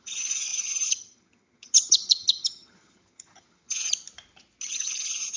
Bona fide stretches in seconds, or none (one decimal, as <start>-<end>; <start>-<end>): 3.9-4.7

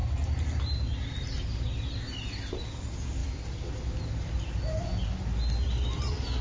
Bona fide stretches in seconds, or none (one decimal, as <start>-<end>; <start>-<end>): 0.0-6.4

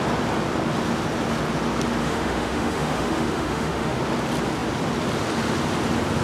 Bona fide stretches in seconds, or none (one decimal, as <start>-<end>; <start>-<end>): 0.0-2.0; 4.0-6.2

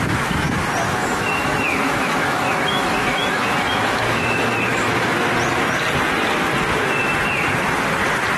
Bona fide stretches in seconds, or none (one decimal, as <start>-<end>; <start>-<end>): 0.0-1.0; 5.3-8.4

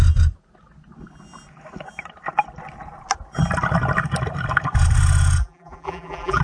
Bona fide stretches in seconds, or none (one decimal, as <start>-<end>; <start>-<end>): 0.0-5.4